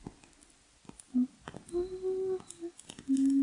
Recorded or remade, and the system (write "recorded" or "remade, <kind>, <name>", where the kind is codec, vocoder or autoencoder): recorded